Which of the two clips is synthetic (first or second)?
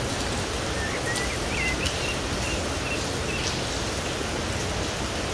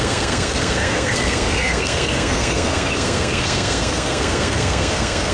second